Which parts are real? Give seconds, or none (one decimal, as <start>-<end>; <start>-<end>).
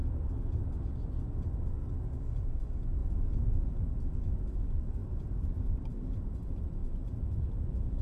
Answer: 0.6-5.0; 6.3-8.0